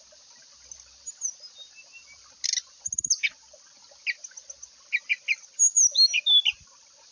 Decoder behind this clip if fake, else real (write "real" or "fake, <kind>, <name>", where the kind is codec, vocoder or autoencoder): real